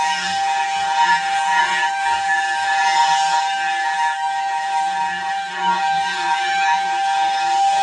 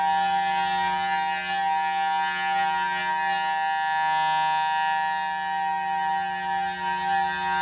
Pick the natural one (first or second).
second